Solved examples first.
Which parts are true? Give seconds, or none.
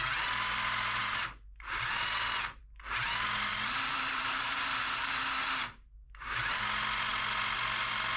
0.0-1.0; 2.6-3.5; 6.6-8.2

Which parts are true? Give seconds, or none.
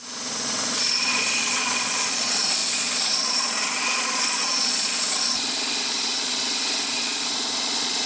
none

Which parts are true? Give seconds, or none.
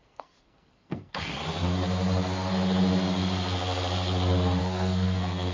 1.3-4.6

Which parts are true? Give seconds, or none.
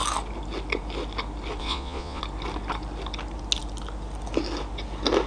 0.0-1.6; 2.2-5.3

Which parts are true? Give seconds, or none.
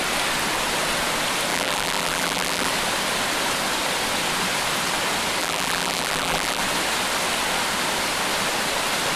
0.0-1.5; 2.7-5.4; 6.6-9.2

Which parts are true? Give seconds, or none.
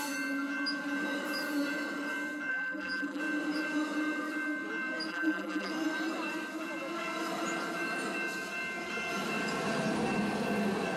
0.0-2.5; 3.2-5.1; 5.7-11.0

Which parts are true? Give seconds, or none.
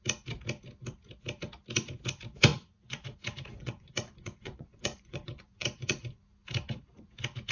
0.0-2.5; 3.0-3.5; 6.2-7.5